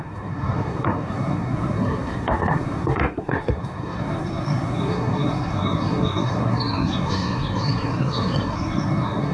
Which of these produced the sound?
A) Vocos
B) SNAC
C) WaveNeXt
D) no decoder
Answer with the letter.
B